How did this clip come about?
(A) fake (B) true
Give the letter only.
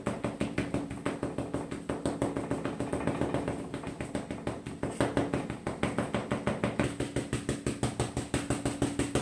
B